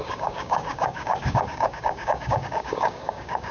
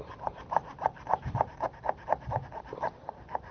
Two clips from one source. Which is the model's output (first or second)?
first